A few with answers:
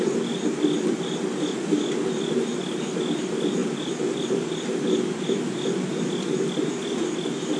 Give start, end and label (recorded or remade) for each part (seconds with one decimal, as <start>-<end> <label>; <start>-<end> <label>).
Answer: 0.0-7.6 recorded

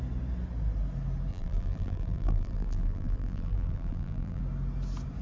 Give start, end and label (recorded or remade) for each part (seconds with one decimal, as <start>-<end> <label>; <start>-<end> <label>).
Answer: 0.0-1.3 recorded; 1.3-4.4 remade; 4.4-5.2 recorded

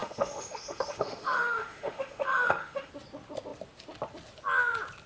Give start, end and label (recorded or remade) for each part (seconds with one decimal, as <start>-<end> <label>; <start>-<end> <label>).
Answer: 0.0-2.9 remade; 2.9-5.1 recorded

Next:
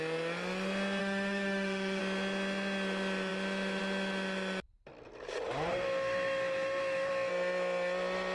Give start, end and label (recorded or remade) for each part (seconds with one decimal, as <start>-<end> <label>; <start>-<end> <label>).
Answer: 0.0-1.0 recorded; 1.0-2.0 remade; 2.0-5.7 recorded; 5.7-7.3 remade; 7.3-8.3 recorded